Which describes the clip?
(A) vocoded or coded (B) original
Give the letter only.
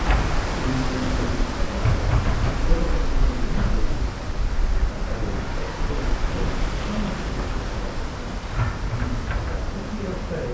B